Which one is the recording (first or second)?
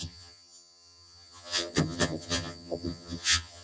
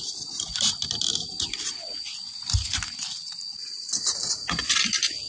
second